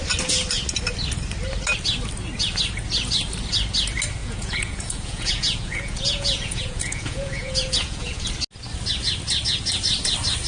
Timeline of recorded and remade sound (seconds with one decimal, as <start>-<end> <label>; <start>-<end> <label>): 0.0-4.2 recorded; 4.2-8.3 remade; 8.3-10.5 recorded